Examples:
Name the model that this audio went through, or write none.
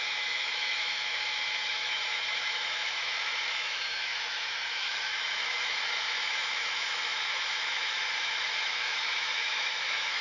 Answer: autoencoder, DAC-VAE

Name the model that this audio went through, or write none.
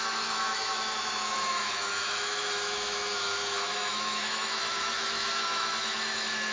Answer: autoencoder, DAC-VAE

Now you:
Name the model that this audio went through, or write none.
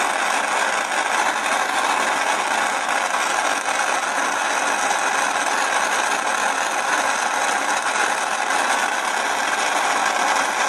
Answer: none